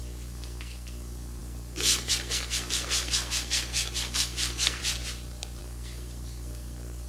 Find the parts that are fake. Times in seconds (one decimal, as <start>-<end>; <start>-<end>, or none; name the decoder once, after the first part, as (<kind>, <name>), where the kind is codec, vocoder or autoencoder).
0.0-4.8 (codec, SNAC); 5.6-7.1